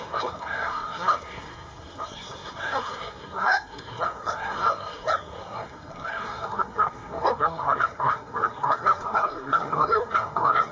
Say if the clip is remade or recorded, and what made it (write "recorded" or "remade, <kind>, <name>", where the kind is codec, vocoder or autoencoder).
remade, codec, SNAC